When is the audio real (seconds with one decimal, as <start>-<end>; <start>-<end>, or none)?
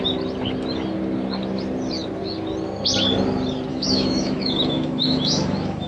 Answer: 0.0-3.7